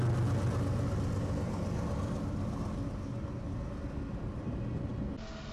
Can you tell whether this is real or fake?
real